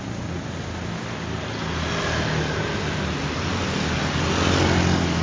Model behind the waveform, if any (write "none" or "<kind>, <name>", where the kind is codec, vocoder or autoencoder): none